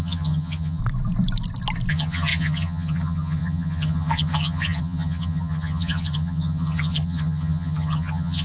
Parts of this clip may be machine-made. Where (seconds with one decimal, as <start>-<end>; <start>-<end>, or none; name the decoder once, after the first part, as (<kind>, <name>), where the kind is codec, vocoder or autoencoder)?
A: 0.0-0.8 (vocoder, HiFi-GAN); 1.9-8.4